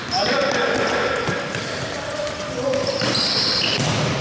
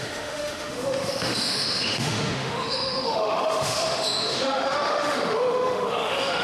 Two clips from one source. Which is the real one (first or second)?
first